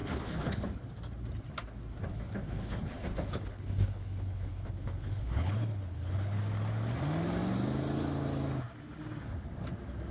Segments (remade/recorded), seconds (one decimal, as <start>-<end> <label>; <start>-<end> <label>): 0.0-0.7 remade; 0.7-2.1 recorded; 2.1-6.4 remade; 6.4-10.1 recorded